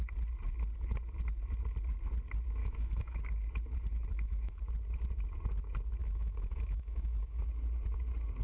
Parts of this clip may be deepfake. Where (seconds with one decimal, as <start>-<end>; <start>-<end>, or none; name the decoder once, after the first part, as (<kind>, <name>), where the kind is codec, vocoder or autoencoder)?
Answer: 2.6-3.2 (autoencoder, DAC-VAE); 4.1-4.6; 6.0-7.4